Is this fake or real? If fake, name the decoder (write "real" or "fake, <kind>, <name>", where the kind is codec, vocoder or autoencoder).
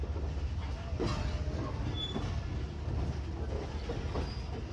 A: real